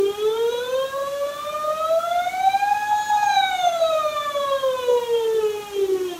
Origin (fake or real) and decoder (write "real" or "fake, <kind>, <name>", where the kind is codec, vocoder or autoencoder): real